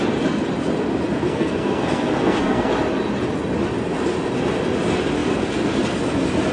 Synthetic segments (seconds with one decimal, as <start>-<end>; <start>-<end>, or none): 1.2-2.7